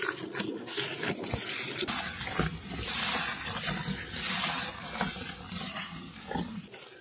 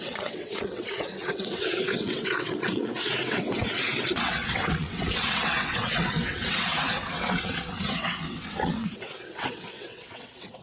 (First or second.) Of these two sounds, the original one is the first